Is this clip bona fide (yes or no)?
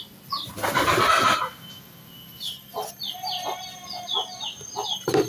no